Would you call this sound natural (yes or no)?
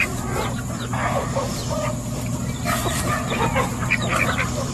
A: yes